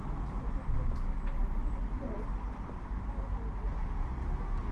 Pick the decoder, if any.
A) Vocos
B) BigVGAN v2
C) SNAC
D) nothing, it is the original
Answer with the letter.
D